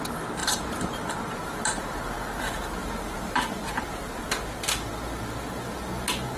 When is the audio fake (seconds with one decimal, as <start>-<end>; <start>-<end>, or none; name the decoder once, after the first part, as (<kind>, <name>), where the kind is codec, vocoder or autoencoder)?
0.4-1.6 (vocoder, BigVGAN v2); 2.8-4.3